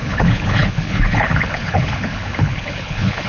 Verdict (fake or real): fake